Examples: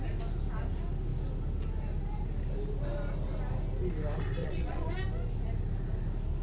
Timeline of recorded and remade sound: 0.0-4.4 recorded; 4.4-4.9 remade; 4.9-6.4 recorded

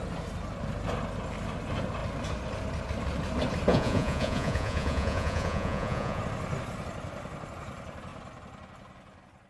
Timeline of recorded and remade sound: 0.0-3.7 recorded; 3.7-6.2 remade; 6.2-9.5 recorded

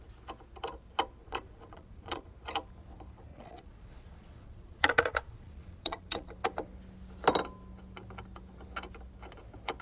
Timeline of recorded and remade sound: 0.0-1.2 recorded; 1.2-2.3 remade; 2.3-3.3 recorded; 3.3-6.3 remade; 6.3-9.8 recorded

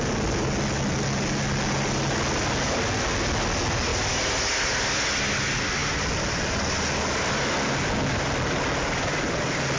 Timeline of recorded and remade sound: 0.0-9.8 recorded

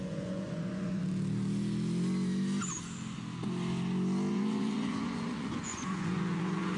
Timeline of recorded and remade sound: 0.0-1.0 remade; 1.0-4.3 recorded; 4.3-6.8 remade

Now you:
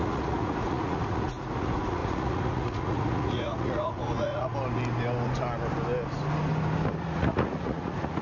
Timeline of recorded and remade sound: 0.0-4.5 remade; 4.5-7.0 recorded; 7.0-8.2 remade